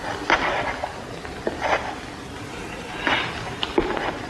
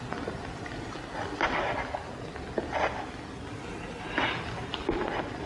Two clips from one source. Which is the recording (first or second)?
second